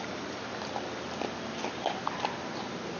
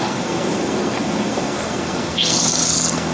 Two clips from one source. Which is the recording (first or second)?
first